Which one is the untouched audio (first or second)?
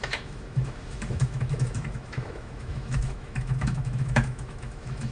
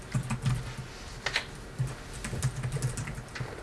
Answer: second